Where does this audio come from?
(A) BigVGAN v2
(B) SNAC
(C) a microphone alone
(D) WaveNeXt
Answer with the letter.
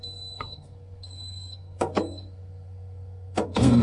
B